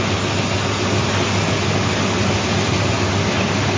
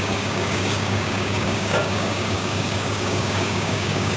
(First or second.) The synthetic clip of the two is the second